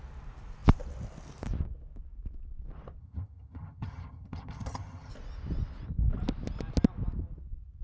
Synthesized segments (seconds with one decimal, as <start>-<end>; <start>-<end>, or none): 3.0-5.1